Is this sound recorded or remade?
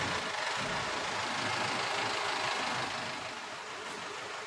recorded